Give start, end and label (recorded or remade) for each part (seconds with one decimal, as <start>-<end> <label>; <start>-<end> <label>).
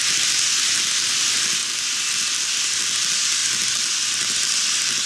0.0-5.1 recorded